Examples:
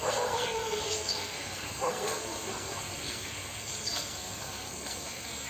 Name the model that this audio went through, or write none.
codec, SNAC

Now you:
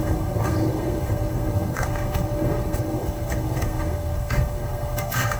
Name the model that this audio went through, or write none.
codec, SNAC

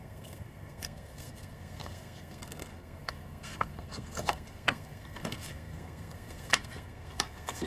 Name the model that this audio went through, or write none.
codec, SNAC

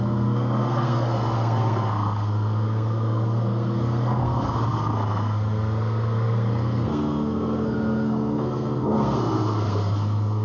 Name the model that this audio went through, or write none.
codec, SNAC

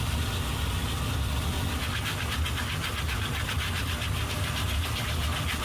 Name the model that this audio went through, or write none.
none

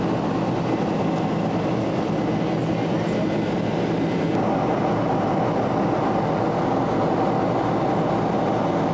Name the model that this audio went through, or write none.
none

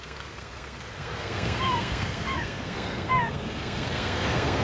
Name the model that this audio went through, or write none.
codec, SNAC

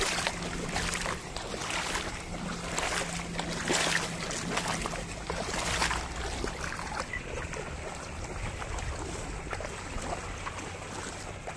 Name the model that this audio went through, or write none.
none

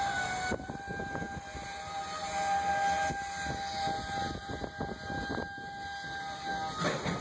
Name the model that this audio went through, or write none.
none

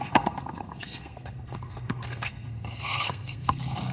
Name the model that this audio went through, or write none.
codec, SNAC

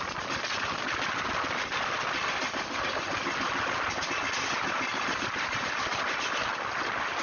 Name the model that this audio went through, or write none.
none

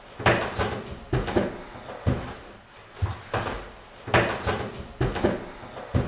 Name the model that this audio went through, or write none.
none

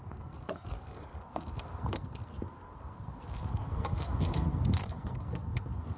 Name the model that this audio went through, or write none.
codec, SNAC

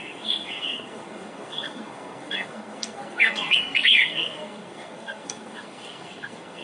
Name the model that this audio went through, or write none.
codec, SNAC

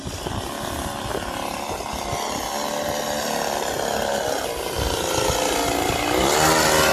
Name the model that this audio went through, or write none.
none